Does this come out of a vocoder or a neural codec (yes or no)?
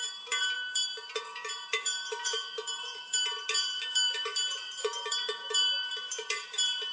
yes